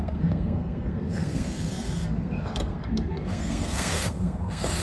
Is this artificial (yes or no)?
yes